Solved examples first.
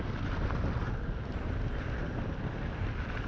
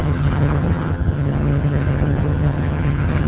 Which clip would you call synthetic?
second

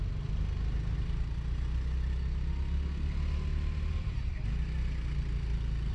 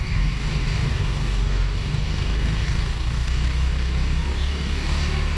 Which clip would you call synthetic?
second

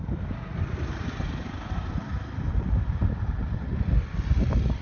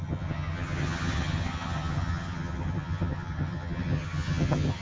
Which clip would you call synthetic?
second